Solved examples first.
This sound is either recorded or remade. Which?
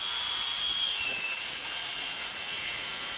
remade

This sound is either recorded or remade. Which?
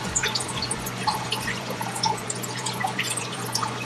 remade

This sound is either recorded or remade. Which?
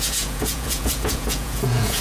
remade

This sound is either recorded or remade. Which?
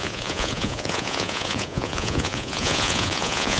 remade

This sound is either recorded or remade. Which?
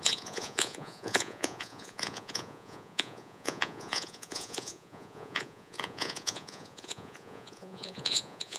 remade